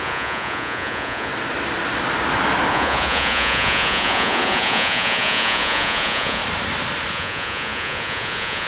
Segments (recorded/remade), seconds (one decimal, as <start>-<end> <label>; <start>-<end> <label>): 0.0-1.3 remade; 1.3-2.7 recorded; 2.7-6.4 remade; 6.4-7.1 recorded; 7.1-8.7 remade